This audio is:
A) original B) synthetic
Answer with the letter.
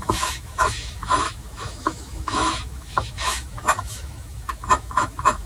B